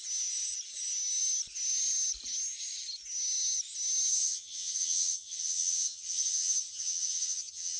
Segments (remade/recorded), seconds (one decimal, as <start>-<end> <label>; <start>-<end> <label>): 0.0-4.1 recorded; 4.1-7.8 remade